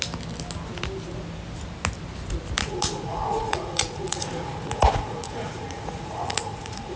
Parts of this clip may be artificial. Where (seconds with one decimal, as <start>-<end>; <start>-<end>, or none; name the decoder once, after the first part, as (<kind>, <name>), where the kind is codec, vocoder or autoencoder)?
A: 2.6-7.0 (vocoder, Vocos)